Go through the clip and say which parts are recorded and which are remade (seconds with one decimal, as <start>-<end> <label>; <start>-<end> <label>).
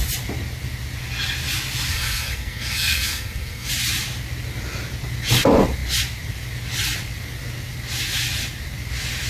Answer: 0.0-1.9 recorded; 1.9-3.7 remade; 3.7-9.3 recorded